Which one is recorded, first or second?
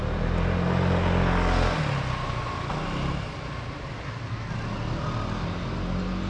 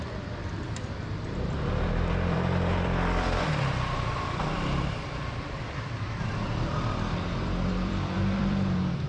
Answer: first